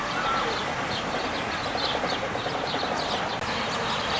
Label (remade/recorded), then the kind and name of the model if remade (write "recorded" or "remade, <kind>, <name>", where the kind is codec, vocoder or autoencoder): recorded